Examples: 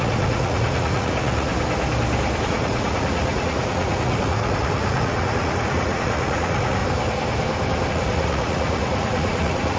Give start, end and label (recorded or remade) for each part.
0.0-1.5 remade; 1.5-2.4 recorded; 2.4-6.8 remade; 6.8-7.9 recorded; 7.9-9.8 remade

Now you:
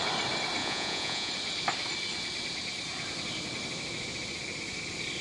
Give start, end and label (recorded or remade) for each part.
0.0-0.6 recorded; 0.6-1.3 remade; 1.3-5.2 recorded

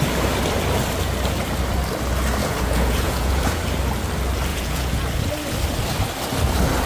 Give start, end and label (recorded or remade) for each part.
0.0-2.4 recorded; 2.4-3.6 remade; 3.6-4.5 recorded; 4.5-5.0 remade; 5.0-6.9 recorded

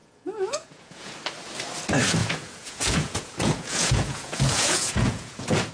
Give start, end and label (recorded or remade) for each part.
0.0-1.1 remade; 1.1-2.2 recorded; 2.2-5.7 remade

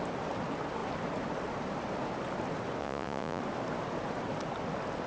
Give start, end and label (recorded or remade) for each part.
0.0-2.8 recorded; 2.8-3.4 remade; 3.4-5.1 recorded

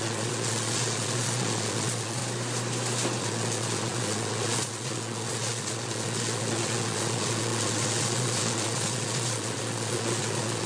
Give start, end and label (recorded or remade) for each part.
0.0-2.2 remade; 2.2-3.2 recorded; 3.2-10.7 remade